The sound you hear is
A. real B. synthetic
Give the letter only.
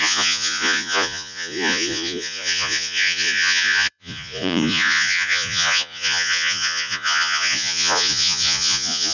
B